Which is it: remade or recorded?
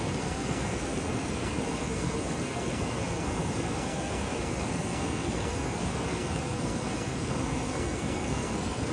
remade